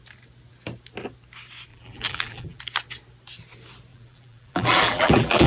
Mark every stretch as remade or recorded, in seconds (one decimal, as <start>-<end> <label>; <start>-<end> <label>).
0.0-1.7 recorded; 1.7-2.6 remade; 2.6-3.9 recorded; 3.9-5.5 remade